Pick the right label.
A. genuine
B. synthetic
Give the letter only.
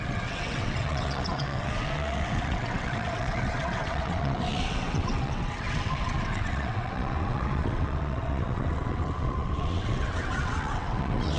B